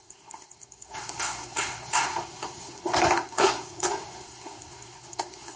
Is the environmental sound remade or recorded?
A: remade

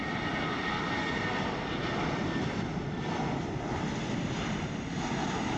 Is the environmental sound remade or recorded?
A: remade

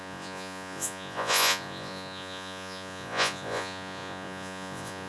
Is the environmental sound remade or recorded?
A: remade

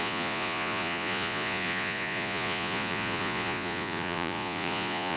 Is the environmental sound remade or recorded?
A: remade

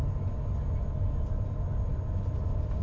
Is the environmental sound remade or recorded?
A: recorded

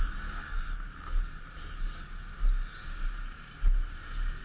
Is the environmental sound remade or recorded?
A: recorded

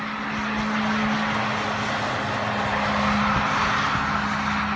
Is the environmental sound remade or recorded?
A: recorded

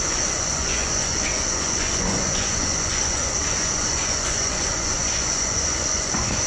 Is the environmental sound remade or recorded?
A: remade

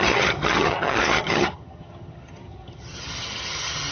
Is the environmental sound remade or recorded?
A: remade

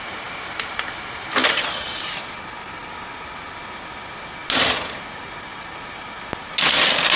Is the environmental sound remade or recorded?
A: recorded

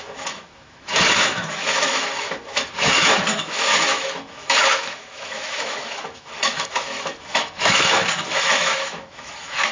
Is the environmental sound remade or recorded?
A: remade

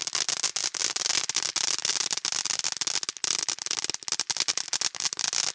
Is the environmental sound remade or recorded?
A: recorded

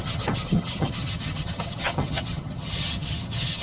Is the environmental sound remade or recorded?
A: remade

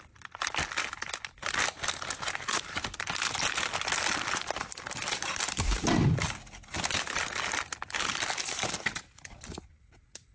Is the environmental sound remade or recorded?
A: recorded